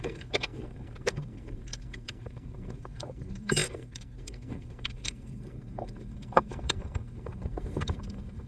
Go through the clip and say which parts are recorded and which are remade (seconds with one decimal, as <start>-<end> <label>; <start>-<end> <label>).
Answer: 0.0-8.5 remade